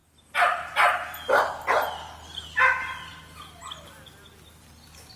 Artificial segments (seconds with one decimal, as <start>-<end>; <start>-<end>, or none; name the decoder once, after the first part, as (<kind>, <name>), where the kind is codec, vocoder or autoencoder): none